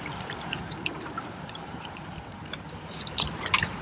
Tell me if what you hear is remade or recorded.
remade